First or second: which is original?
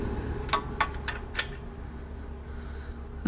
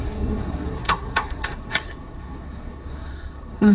first